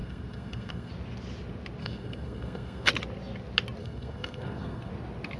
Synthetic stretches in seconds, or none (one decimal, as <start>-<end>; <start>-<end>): 0.0-0.9; 1.8-2.9; 3.8-4.9